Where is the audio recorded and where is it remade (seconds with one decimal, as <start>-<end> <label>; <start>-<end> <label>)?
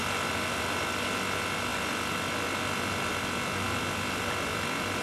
0.0-5.0 recorded